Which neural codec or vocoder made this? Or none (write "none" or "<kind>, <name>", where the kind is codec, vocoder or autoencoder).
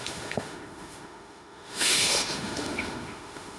autoencoder, DAC-VAE